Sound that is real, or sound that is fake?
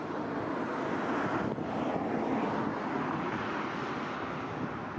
real